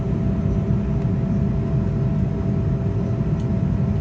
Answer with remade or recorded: recorded